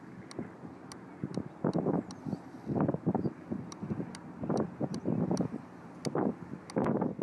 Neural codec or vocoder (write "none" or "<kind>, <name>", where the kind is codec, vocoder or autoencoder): none